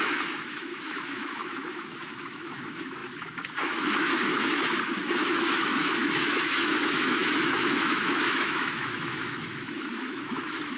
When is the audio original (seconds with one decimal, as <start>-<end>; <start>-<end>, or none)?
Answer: none